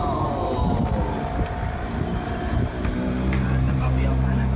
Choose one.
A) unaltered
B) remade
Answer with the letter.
B